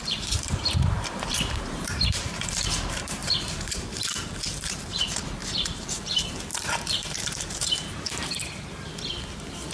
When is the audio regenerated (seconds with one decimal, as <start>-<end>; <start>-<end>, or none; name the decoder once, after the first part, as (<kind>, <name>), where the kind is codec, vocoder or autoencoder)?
0.0-8.9 (vocoder, BigVGAN v2)